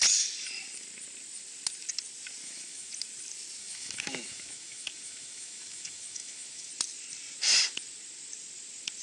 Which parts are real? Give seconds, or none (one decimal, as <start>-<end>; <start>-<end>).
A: 0.0-2.4; 2.9-3.6; 6.7-9.0